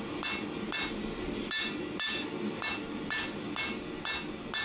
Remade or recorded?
recorded